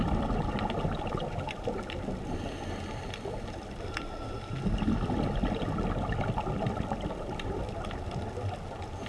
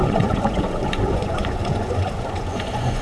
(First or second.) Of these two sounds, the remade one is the second